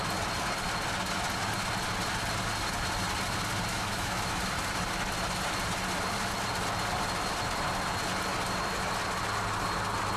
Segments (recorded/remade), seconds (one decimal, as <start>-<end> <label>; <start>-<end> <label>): 0.0-3.7 recorded; 3.7-4.4 remade; 4.4-10.2 recorded